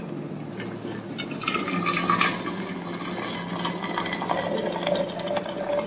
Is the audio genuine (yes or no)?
yes